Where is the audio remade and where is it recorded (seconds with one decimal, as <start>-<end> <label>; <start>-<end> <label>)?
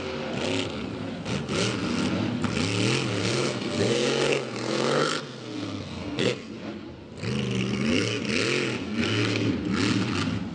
0.0-3.2 recorded; 3.2-6.5 remade; 6.5-7.6 recorded; 7.6-8.2 remade; 8.2-8.8 recorded; 8.8-9.5 remade; 9.5-10.5 recorded